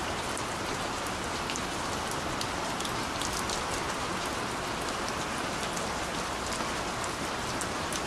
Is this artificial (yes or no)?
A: no